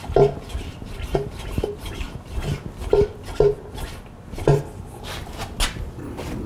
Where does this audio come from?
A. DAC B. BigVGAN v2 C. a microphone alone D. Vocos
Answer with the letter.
C